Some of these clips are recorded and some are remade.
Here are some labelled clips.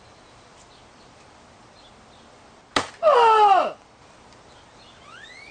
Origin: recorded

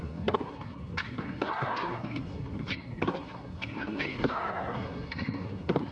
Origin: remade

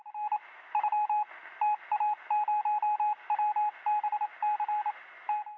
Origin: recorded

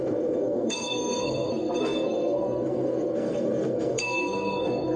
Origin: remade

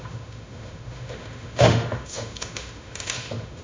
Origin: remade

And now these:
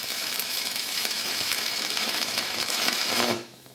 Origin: remade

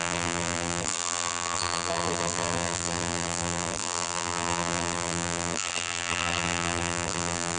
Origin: remade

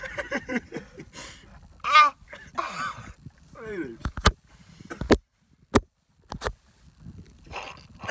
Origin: recorded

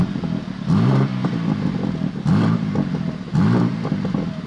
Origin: recorded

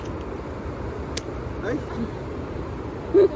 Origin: recorded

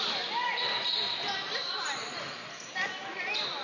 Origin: recorded